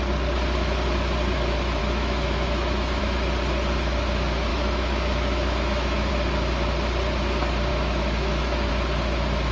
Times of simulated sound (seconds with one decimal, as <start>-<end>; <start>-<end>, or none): 1.8-3.0; 4.5-6.1; 7.7-8.7